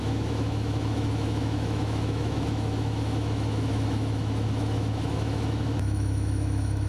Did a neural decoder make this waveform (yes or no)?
yes